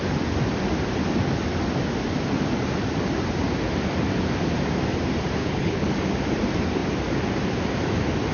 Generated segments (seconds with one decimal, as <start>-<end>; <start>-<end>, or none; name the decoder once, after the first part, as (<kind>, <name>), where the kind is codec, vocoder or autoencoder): 5.4-5.9 (codec, HILCodec)